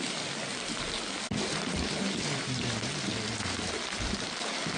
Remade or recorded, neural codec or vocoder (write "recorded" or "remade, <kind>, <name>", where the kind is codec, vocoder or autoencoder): recorded